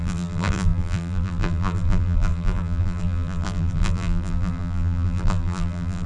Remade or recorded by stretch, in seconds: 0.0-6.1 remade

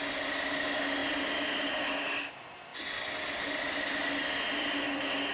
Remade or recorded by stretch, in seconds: 0.0-5.3 recorded

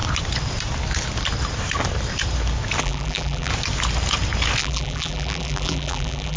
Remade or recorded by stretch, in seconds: 0.0-2.8 recorded; 2.8-3.5 remade; 3.5-4.6 recorded; 4.6-6.4 remade

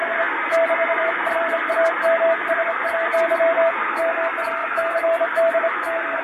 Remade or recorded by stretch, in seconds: 0.0-0.8 recorded; 0.8-1.7 remade; 1.7-6.2 recorded

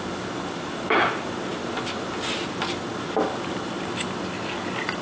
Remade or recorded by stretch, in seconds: 0.0-5.0 recorded

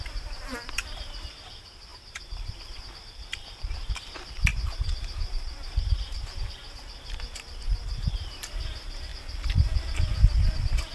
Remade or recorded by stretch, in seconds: 0.0-9.1 remade; 9.1-10.2 recorded; 10.2-10.9 remade

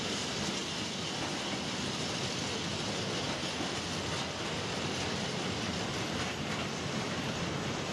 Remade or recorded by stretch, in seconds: 0.0-7.9 recorded

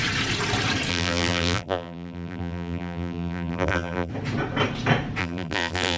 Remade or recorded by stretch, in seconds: 0.0-0.9 recorded; 0.9-4.1 remade; 4.1-5.2 recorded; 5.2-6.0 remade